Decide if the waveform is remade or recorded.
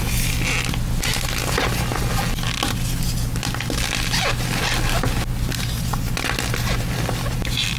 recorded